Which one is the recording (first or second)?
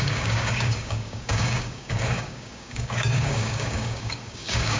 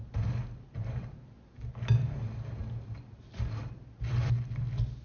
second